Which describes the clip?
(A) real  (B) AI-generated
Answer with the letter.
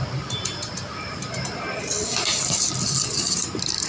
A